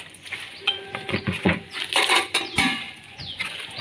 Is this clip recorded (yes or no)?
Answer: no